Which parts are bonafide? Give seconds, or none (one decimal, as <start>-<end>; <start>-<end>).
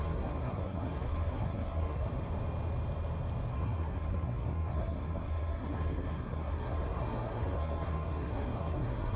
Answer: 2.1-3.5